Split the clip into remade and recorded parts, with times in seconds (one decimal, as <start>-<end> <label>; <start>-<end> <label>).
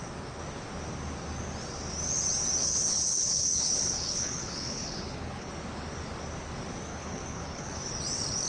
0.0-2.6 recorded; 2.6-5.5 remade; 5.5-6.9 recorded; 6.9-7.8 remade; 7.8-8.5 recorded